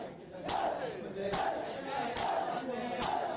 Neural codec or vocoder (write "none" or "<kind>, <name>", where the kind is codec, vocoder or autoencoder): none